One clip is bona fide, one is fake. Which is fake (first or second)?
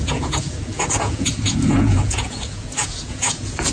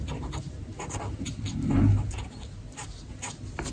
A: first